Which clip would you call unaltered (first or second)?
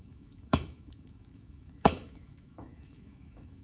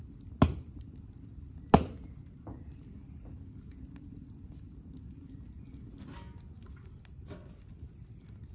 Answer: second